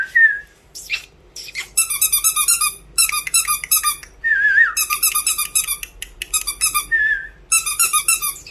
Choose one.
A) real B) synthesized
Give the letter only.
A